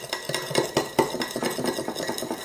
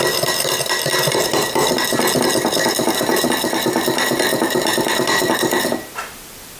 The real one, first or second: first